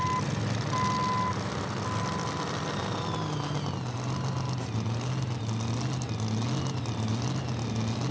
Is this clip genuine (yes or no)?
yes